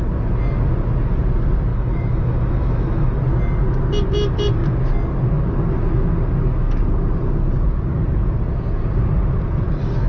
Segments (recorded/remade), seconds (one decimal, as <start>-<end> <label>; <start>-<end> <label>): 0.0-1.7 recorded; 1.7-3.2 remade; 3.2-10.1 recorded